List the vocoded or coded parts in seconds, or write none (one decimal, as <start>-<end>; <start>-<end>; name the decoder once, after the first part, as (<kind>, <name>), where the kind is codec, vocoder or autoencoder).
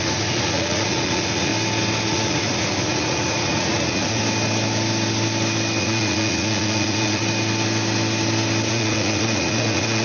0.0-1.5 (vocoder, Vocos); 2.1-4.2; 5.8-7.2; 8.7-10.0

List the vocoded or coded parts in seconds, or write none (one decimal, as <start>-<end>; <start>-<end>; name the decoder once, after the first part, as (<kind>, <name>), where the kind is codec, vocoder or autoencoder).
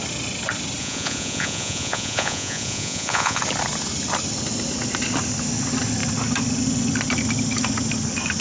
0.8-3.4 (vocoder, Vocos)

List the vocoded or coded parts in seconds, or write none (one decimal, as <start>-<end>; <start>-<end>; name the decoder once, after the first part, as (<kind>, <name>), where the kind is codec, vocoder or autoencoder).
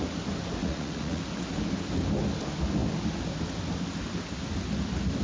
0.6-1.2 (vocoder, Vocos)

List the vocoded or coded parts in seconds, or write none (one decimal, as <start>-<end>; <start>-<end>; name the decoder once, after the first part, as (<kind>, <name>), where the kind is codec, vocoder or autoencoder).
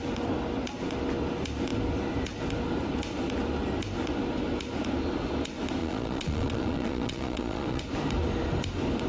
5.8-7.8 (vocoder, Vocos)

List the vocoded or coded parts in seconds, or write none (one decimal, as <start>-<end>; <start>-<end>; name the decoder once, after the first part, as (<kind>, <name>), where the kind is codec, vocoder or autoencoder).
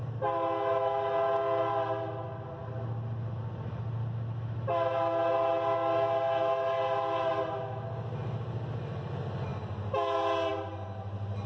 none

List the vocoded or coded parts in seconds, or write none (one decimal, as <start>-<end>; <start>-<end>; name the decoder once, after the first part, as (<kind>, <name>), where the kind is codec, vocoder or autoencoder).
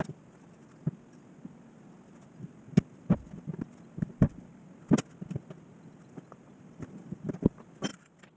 none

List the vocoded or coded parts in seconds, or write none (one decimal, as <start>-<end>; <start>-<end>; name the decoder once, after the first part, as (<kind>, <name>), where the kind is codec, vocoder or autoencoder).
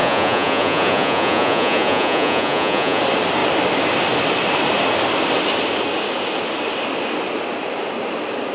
0.0-3.0 (vocoder, Vocos)